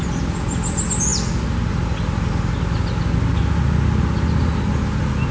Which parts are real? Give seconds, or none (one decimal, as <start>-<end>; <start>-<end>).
0.0-5.3